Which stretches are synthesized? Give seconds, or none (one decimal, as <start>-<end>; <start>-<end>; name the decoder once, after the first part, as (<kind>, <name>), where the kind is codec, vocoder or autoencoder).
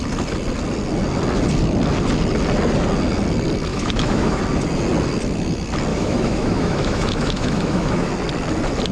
3.7-4.4 (autoencoder, DAC-VAE); 5.9-8.1